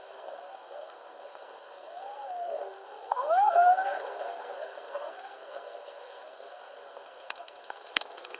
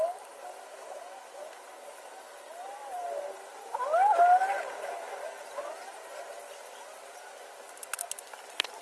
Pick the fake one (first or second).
first